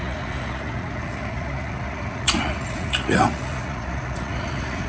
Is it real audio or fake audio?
fake